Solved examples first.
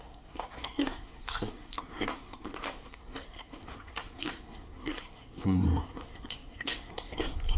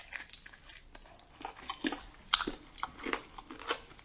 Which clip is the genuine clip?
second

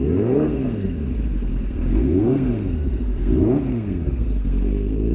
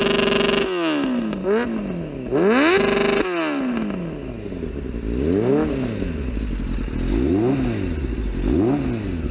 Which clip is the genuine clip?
second